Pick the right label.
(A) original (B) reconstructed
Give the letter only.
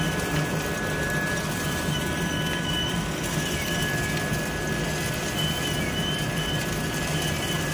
A